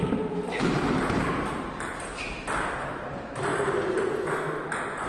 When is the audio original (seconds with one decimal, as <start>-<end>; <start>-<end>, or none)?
2.1-2.7; 3.5-5.1